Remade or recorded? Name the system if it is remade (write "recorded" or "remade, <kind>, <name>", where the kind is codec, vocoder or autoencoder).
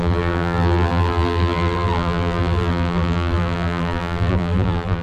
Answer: remade, vocoder, BigVGAN v2